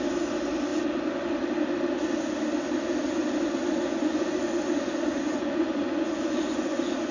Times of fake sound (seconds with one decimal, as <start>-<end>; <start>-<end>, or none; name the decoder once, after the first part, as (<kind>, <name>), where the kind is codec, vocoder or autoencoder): 3.6-7.1 (vocoder, Vocos)